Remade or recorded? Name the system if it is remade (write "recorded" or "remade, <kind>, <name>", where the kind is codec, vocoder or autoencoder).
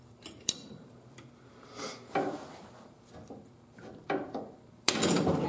remade, vocoder, BigVGAN v2